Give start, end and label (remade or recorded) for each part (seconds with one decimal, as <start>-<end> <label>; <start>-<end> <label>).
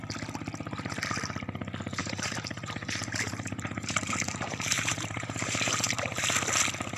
0.0-2.0 recorded; 2.0-6.2 remade; 6.2-7.0 recorded